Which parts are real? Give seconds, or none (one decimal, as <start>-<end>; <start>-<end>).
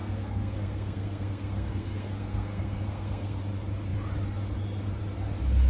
3.4-5.7